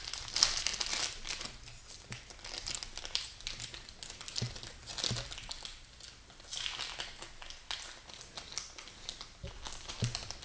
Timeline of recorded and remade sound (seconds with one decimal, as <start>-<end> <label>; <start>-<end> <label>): 0.0-10.4 recorded